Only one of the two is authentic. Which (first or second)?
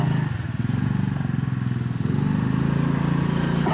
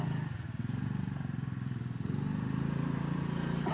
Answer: first